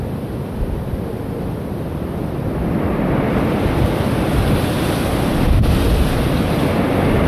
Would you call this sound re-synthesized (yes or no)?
no